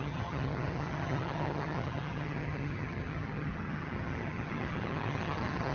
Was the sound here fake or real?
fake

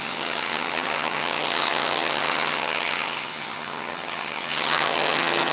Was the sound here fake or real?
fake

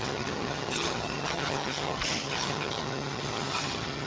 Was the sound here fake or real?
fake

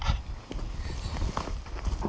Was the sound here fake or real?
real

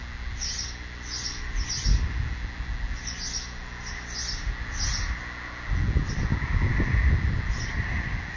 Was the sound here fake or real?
real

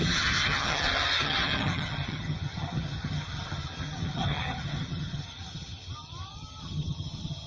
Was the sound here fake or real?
fake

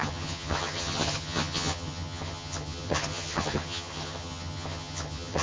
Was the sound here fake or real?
fake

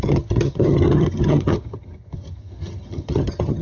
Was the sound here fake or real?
fake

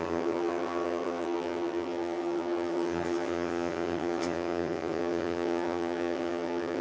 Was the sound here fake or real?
fake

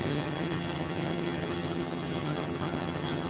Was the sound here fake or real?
fake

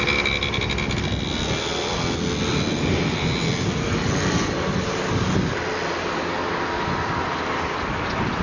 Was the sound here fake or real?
real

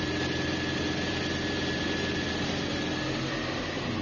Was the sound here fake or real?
real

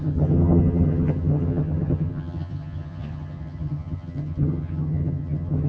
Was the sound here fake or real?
fake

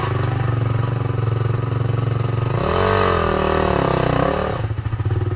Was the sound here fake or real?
real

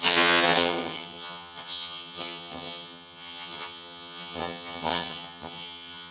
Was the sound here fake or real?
fake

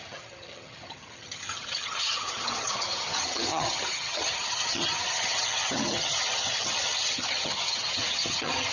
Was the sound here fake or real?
fake